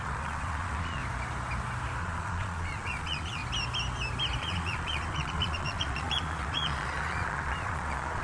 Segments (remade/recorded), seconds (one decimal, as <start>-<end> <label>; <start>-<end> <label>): 0.0-1.0 remade; 1.0-2.0 recorded; 2.0-3.4 remade; 3.4-4.4 recorded; 4.4-8.2 remade